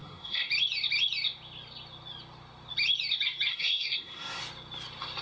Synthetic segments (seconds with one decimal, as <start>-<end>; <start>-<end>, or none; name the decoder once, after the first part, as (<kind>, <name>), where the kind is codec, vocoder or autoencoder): 0.0-0.5 (codec, SNAC); 3.5-4.4